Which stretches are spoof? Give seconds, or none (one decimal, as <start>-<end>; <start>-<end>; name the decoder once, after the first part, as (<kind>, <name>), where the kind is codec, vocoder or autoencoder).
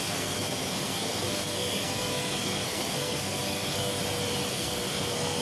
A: 0.0-4.0 (codec, SNAC); 4.5-5.4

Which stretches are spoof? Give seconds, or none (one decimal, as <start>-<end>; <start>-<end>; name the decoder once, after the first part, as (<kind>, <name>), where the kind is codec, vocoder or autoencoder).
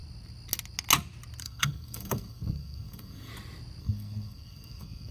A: 1.4-3.3 (codec, SNAC); 3.8-5.1